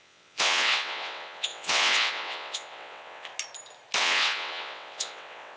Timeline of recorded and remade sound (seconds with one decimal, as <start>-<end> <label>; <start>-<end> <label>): 0.0-3.3 remade; 3.3-4.0 recorded; 4.0-5.6 remade